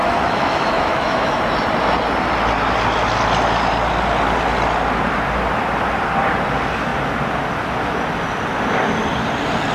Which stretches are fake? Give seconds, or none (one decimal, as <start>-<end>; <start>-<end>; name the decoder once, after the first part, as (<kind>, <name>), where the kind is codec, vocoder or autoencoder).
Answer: 0.0-1.4 (autoencoder, DAC-VAE)